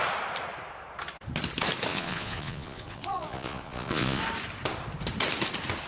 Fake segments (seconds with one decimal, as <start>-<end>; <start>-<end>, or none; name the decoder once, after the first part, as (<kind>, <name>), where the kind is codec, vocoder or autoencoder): 1.9-4.2 (vocoder, Vocos)